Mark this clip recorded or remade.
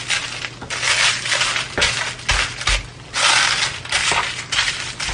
recorded